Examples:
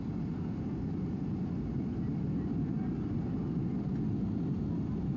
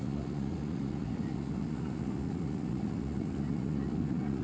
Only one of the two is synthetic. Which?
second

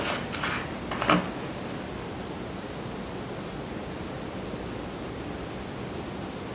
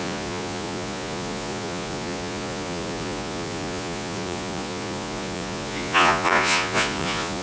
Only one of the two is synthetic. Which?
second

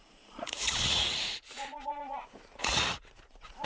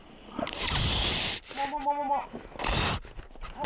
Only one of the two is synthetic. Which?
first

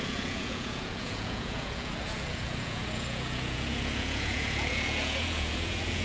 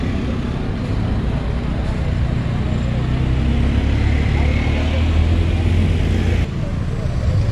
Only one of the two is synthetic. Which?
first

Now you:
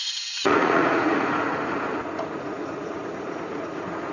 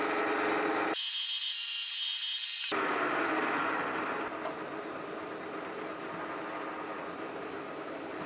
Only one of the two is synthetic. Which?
first